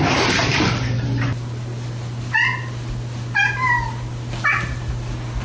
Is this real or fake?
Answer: real